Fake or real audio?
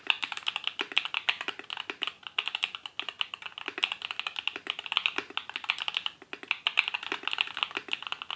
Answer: real